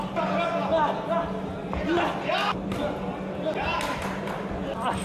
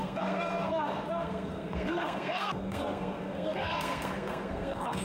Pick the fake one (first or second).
second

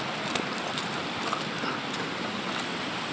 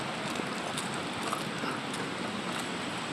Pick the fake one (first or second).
first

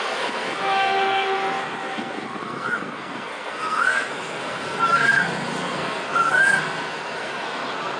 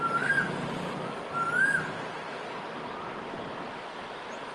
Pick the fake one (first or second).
first